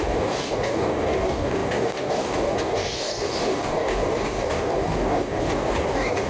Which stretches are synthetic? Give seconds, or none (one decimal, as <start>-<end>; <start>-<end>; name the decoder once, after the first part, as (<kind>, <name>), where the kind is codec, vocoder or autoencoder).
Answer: 0.0-6.3 (codec, DAC)